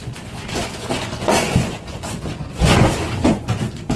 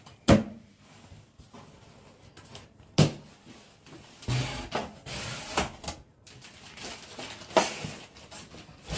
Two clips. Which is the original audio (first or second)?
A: second